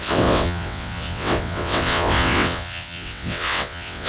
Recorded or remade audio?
remade